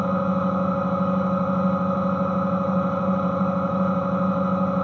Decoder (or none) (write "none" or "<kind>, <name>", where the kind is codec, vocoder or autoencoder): none